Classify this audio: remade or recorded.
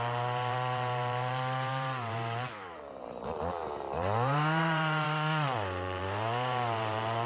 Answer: remade